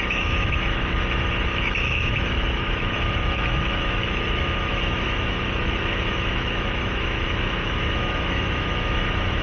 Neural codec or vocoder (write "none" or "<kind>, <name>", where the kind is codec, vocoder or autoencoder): autoencoder, DAC-VAE